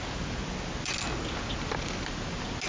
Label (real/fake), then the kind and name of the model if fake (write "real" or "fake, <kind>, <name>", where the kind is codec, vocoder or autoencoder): real